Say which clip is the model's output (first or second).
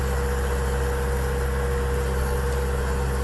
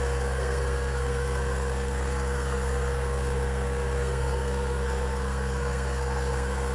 second